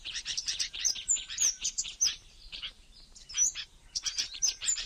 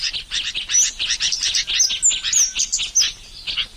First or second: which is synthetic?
first